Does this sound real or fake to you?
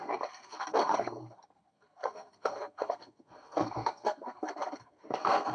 fake